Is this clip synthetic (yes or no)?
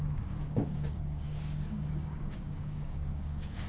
yes